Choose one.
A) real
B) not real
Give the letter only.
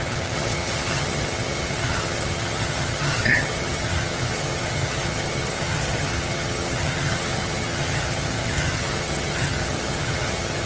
B